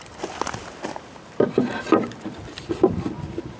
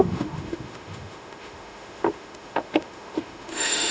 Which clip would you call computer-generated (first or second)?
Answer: second